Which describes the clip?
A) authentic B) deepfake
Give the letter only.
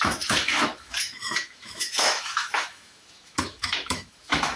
B